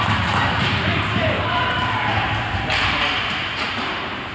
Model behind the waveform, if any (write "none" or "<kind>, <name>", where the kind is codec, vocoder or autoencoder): vocoder, BigVGAN v2